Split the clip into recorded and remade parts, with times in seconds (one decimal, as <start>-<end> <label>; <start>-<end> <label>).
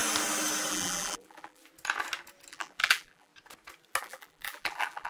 0.0-0.7 recorded; 0.7-1.6 remade; 1.6-2.5 recorded; 2.5-3.3 remade; 3.3-4.0 recorded; 4.0-5.1 remade